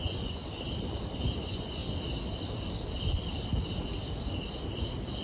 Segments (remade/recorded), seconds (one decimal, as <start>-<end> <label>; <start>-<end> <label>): 0.0-0.4 remade; 0.4-1.4 recorded; 1.4-1.8 remade; 1.8-5.2 recorded